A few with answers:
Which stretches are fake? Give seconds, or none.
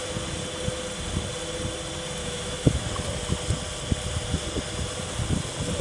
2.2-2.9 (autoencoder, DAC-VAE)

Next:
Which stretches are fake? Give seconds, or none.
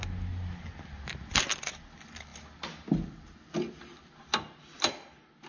none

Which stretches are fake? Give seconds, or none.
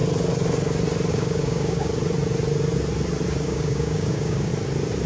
1.1-1.9 (codec, DAC); 3.4-4.5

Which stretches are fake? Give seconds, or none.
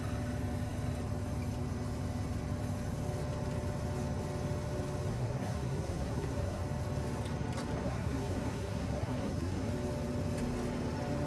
5.1-6.6 (codec, SNAC); 7.8-9.7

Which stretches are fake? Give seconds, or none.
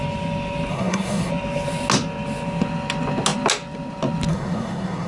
0.7-1.3 (codec, SNAC); 4.3-5.1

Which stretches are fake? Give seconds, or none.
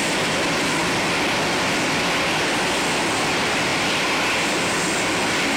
none